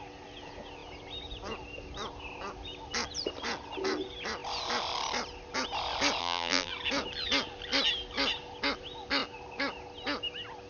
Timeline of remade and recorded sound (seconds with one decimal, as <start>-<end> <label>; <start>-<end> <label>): 0.0-6.2 recorded; 6.2-6.7 remade; 6.7-10.7 recorded

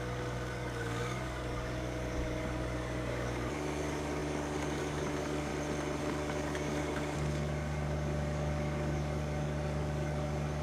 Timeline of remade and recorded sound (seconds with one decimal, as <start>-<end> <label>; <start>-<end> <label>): 0.0-5.5 remade; 5.5-6.0 recorded; 6.0-10.6 remade